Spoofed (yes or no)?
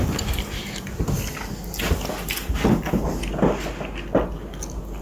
no